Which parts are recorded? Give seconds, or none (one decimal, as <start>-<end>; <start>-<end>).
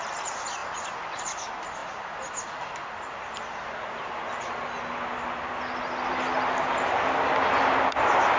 0.0-8.4